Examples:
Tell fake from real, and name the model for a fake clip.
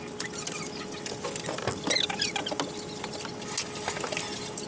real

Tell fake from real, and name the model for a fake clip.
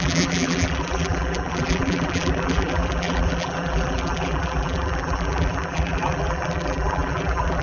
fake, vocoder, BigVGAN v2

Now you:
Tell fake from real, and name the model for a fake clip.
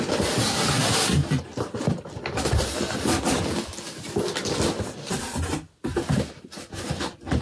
fake, vocoder, BigVGAN v2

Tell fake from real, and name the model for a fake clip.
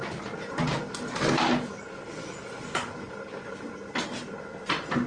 real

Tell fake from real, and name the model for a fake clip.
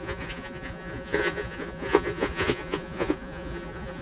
fake, vocoder, Vocos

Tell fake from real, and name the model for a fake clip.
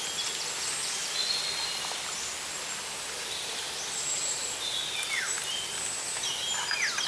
real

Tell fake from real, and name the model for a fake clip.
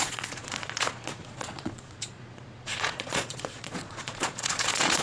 fake, vocoder, Vocos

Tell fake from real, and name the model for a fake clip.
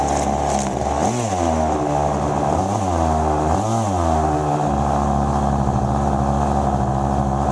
real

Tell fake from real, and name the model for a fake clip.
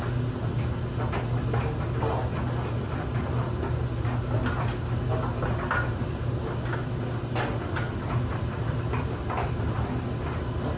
real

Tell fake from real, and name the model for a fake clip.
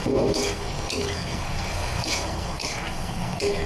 fake, codec, SNAC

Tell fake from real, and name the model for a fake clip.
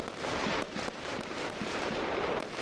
fake, vocoder, BigVGAN v2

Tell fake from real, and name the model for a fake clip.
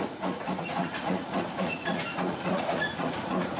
fake, vocoder, Vocos